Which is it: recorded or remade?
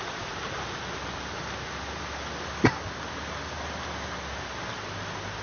recorded